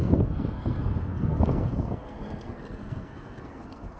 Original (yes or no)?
no